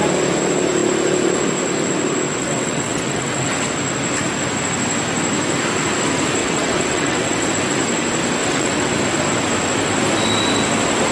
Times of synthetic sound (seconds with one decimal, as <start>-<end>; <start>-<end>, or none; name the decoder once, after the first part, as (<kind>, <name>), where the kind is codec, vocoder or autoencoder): 2.4-3.5 (vocoder, WaveNeXt); 6.4-7.5; 8.4-8.9